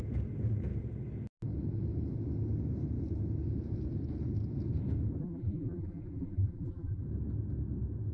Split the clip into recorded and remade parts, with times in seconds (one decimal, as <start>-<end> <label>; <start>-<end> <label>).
0.0-5.2 recorded; 5.2-7.0 remade; 7.0-8.1 recorded